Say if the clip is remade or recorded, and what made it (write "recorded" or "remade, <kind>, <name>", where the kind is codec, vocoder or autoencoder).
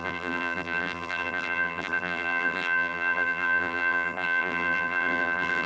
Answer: remade, vocoder, BigVGAN v2